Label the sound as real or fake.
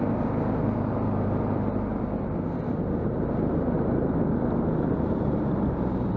real